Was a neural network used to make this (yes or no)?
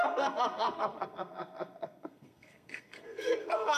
yes